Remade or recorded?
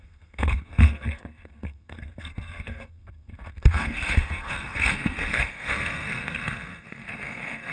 remade